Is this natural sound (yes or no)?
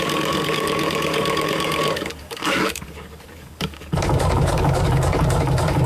no